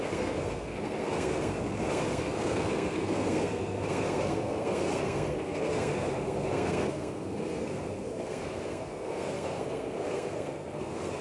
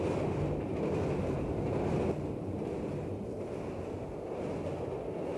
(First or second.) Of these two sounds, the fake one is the first